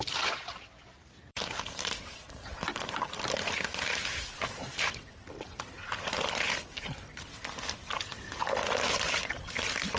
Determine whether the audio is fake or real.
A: fake